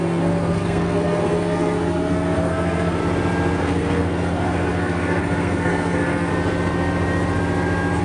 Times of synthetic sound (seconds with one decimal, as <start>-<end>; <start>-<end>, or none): 0.0-3.0; 3.6-6.3